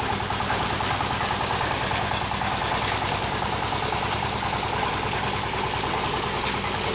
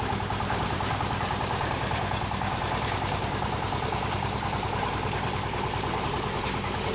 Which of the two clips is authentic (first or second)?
first